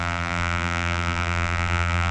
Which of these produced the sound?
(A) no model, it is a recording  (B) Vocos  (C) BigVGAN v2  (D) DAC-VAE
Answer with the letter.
C